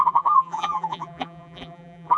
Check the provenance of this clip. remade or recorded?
remade